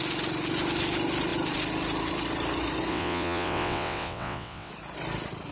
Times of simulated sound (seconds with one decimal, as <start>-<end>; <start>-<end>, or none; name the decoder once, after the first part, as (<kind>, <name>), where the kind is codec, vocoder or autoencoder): 2.9-4.7 (vocoder, WaveNeXt)